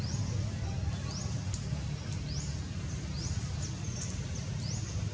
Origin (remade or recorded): recorded